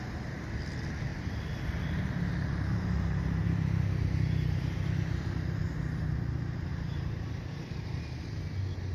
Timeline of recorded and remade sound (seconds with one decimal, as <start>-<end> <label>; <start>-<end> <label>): 0.0-1.1 recorded; 1.1-6.0 remade; 6.0-6.7 recorded; 6.7-8.4 remade; 8.4-8.9 recorded